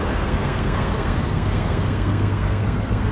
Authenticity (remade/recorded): remade